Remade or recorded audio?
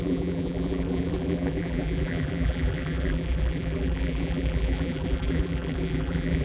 remade